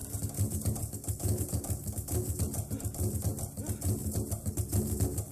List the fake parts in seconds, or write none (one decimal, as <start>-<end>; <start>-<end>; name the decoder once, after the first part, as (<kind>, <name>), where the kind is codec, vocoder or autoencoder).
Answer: none